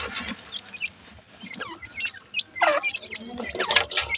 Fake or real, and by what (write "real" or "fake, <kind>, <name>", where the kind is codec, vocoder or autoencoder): real